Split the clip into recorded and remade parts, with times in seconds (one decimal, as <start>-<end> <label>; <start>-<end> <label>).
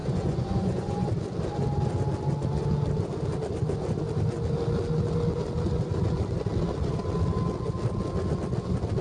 0.0-1.1 remade; 1.1-9.0 recorded